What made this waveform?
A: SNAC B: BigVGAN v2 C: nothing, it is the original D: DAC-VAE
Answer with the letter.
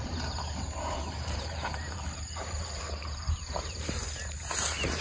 B